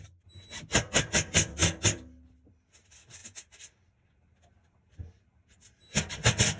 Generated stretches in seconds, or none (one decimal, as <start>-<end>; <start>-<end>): none